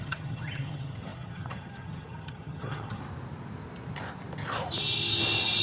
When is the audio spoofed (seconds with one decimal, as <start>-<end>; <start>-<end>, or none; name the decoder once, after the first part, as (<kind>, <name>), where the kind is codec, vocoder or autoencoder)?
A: 0.0-3.0 (vocoder, HiFi-GAN)

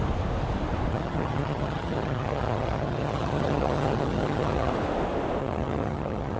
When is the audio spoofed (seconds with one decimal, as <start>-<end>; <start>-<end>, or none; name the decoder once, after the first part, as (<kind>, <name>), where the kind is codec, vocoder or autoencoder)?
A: 0.9-4.7 (vocoder, HiFi-GAN); 5.4-6.4

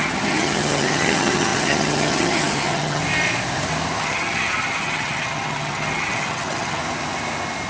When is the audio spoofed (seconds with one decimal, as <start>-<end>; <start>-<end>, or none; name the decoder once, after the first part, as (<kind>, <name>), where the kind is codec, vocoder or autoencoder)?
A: 0.0-3.0 (vocoder, HiFi-GAN); 4.0-6.8

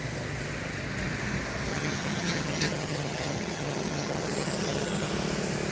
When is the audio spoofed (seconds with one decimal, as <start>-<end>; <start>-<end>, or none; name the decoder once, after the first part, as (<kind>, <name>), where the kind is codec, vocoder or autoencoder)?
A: 1.7-5.1 (vocoder, HiFi-GAN)